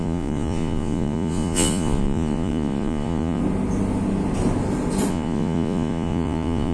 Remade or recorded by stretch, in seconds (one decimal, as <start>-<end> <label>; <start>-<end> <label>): 0.0-3.4 remade; 3.4-5.1 recorded; 5.1-6.7 remade